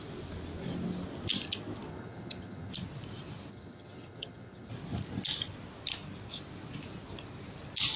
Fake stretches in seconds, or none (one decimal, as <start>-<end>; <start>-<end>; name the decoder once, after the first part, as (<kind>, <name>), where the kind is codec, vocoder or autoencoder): 1.9-2.7 (vocoder, HiFi-GAN); 3.5-4.7